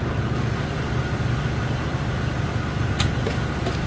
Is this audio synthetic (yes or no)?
no